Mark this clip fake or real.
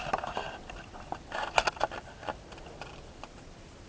real